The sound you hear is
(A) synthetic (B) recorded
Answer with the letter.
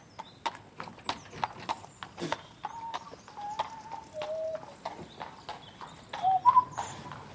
B